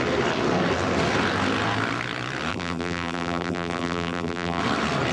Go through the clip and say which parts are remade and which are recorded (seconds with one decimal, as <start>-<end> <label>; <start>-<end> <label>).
0.0-2.5 recorded; 2.5-4.6 remade; 4.6-5.1 recorded